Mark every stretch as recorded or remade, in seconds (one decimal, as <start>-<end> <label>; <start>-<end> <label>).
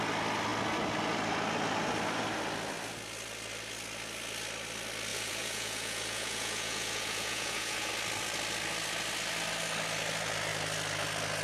0.0-5.1 recorded; 5.1-7.9 remade; 7.9-11.4 recorded